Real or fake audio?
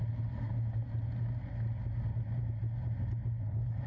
real